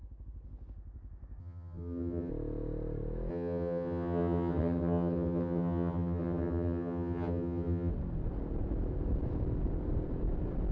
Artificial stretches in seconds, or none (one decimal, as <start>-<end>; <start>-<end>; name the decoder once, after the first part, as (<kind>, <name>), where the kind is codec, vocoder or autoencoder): 1.4-2.3 (vocoder, HiFi-GAN); 3.3-7.9